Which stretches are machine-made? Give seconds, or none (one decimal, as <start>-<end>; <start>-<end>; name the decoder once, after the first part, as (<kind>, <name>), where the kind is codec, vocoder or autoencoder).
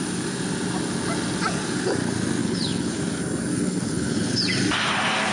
2.4-3.0 (codec, HILCodec); 3.5-4.4